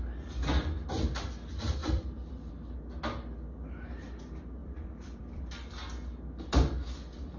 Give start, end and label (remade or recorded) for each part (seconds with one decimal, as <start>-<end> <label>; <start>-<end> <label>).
0.0-1.8 recorded; 1.8-2.5 remade; 2.5-4.6 recorded; 4.6-5.4 remade; 5.4-7.4 recorded